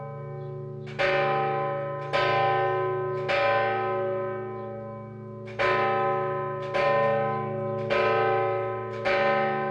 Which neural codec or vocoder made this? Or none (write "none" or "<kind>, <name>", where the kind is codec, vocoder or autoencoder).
none